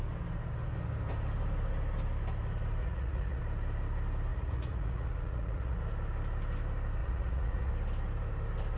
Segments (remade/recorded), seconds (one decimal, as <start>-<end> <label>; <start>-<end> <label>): 0.0-2.8 recorded; 2.8-3.4 remade; 3.4-4.3 recorded; 4.3-5.8 remade; 5.8-7.0 recorded; 7.0-7.7 remade; 7.7-8.8 recorded